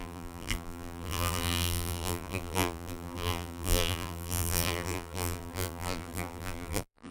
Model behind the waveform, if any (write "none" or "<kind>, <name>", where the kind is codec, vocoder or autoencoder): vocoder, BigVGAN v2